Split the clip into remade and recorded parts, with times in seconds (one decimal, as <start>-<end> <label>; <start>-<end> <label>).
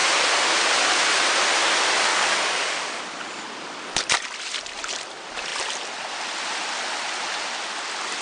0.0-2.1 recorded; 2.1-3.0 remade; 3.0-8.2 recorded